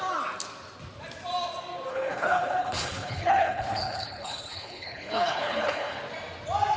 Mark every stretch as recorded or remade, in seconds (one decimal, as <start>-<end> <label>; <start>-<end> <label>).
0.0-1.9 recorded; 1.9-6.0 remade; 6.0-6.8 recorded

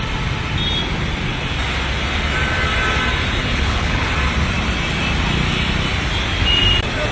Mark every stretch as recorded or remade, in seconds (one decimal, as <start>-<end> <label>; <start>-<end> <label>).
0.0-3.4 recorded; 3.4-4.1 remade; 4.1-7.1 recorded